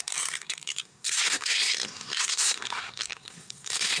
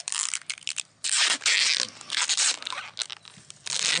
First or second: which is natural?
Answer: second